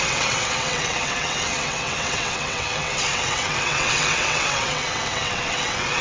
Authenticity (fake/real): fake